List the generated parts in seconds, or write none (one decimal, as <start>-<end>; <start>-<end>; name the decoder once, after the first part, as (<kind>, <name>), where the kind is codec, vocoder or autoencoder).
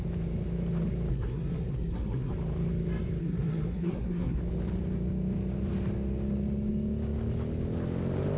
1.1-2.3 (codec, SNAC); 3.2-4.4